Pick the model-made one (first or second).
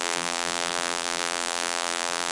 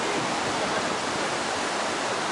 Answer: first